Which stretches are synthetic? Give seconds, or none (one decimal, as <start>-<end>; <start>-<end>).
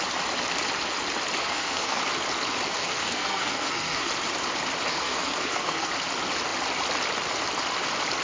1.4-2.0; 2.7-4.1; 4.9-5.9